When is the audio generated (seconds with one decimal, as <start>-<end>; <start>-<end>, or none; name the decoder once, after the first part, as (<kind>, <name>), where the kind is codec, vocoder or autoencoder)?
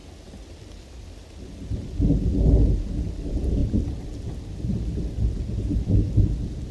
none